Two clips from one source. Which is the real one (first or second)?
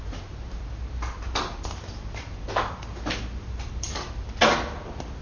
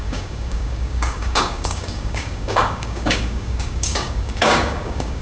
first